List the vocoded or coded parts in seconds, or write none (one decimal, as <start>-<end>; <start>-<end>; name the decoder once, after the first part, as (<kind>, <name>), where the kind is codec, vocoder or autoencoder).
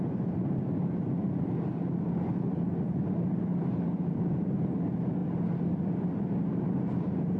none